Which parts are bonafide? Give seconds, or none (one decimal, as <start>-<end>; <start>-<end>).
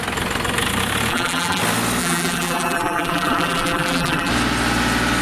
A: 0.0-1.1; 1.6-2.0; 4.3-5.2